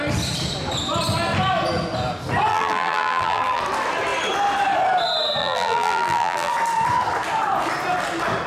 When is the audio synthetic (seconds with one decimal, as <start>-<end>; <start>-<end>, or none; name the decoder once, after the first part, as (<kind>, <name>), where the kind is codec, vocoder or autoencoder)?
2.5-3.6 (vocoder, BigVGAN v2); 5.4-6.5